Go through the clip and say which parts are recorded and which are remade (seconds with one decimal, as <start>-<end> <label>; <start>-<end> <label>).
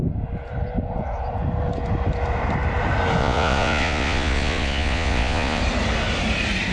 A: 0.0-3.2 recorded; 3.2-5.6 remade; 5.6-6.7 recorded